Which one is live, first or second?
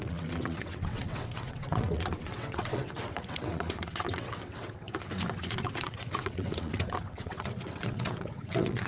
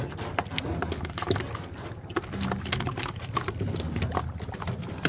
second